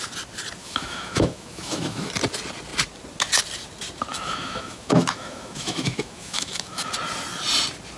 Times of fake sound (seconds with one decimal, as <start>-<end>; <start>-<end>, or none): 0.6-2.1; 4.1-6.9